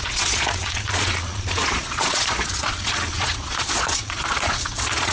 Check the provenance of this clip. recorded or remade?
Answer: remade